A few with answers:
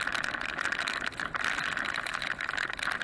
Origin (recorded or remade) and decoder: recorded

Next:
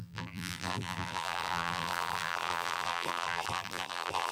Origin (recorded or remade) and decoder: remade, vocoder, BigVGAN v2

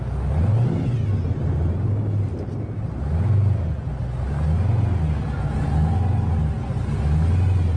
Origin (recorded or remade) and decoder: recorded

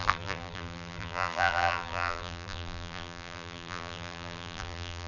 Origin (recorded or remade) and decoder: remade, vocoder, BigVGAN v2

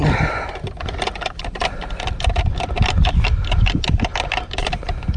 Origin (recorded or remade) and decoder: recorded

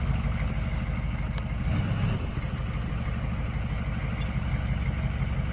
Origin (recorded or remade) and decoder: recorded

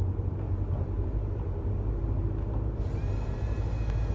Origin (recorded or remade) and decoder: remade, vocoder, BigVGAN v2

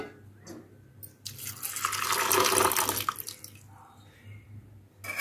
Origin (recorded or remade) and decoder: recorded